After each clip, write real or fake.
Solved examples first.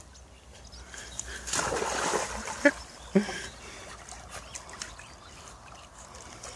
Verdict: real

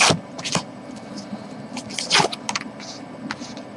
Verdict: real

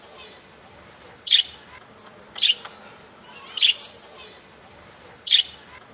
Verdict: real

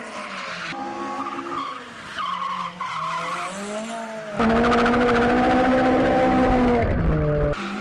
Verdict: real